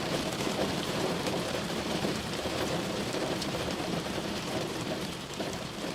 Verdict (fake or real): fake